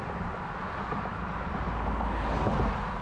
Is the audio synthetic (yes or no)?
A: no